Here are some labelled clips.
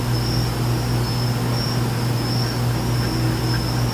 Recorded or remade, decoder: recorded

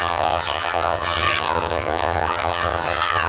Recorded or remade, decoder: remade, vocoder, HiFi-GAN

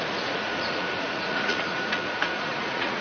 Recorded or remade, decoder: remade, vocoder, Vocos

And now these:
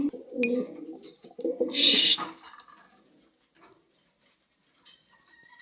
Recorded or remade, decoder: recorded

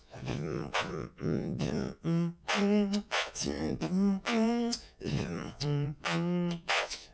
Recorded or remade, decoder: remade, vocoder, Vocos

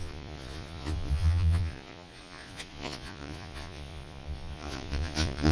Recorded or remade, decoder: remade, vocoder, Vocos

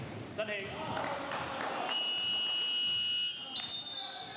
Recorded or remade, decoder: recorded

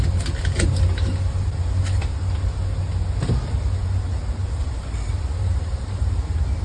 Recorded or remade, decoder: recorded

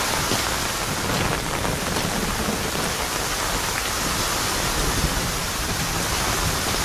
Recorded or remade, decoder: recorded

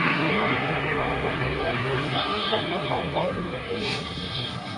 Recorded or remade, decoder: remade, codec, SNAC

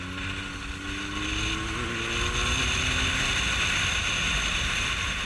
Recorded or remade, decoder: recorded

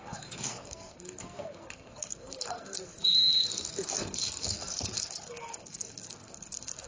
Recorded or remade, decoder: remade, codec, SNAC